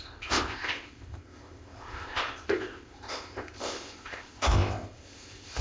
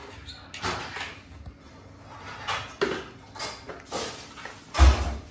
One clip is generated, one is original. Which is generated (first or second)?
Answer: first